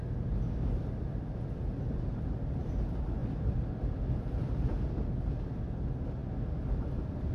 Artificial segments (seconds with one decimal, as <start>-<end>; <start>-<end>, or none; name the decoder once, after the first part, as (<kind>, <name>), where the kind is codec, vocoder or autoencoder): none